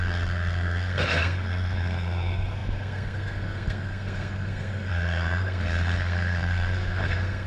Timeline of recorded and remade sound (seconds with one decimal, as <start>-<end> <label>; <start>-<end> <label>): 0.0-7.5 remade